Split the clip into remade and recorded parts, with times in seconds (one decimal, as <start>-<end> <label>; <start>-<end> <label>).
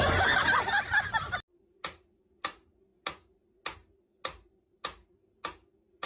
0.0-6.1 recorded